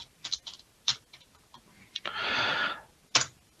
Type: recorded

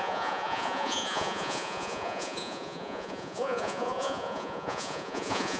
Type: remade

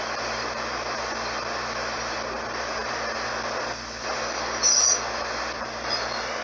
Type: recorded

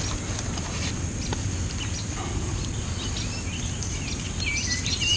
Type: recorded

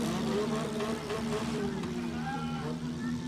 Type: remade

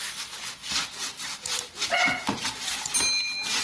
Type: recorded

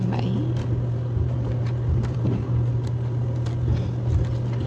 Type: recorded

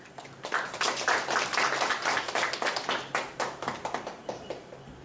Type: recorded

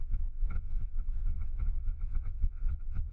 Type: remade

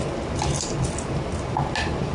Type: recorded